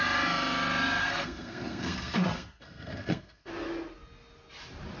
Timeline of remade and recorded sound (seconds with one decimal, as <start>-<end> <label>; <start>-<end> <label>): 0.0-1.0 recorded; 1.0-3.5 remade; 3.5-5.0 recorded